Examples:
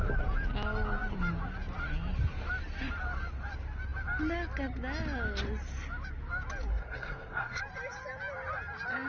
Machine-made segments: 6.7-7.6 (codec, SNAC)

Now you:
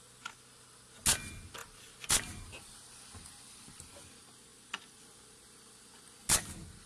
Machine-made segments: none

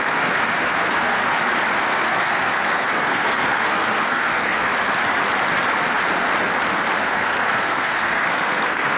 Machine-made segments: 0.0-1.2 (codec, SNAC); 1.8-4.7; 7.1-9.0

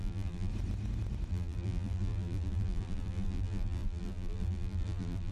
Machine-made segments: 0.0-0.5 (vocoder, BigVGAN v2); 1.3-5.3